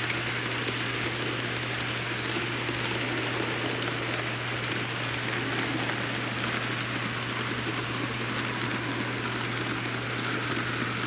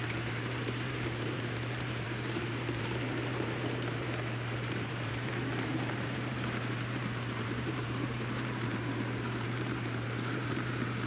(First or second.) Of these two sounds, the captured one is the first